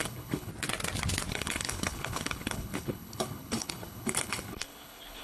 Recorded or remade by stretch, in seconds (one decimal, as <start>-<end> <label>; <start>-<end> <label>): 0.0-0.5 remade; 0.5-1.3 recorded; 1.3-5.2 remade